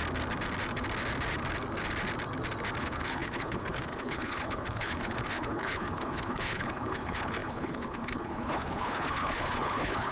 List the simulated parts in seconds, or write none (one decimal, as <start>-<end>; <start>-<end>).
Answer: 2.8-10.1